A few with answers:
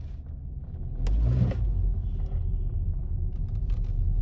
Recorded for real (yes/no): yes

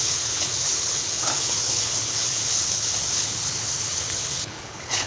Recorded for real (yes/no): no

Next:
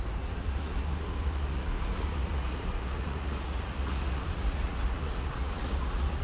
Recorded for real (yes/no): no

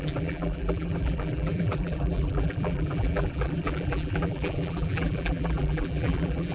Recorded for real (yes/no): no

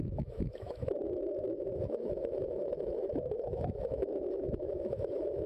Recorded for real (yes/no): no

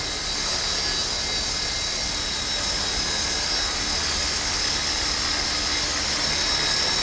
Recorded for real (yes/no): yes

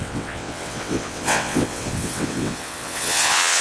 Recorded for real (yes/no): no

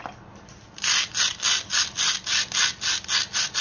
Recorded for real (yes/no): yes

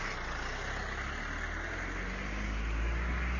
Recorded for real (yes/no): yes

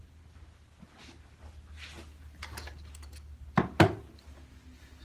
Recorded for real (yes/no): yes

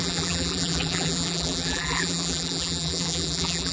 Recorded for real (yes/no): no